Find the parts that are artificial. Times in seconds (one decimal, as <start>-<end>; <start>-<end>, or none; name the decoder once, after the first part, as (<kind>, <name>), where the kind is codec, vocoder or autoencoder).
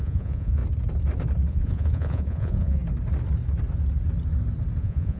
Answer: 0.0-0.6 (vocoder, Vocos); 1.5-2.8; 4.8-5.2